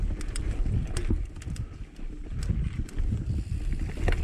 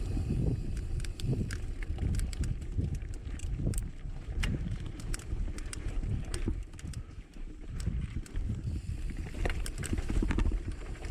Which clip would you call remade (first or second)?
second